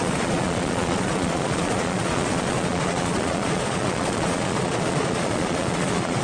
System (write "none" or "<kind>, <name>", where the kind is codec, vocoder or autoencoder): vocoder, Vocos